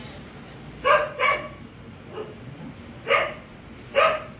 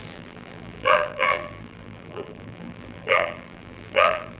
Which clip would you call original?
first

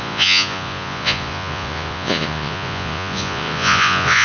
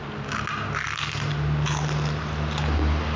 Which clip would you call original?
second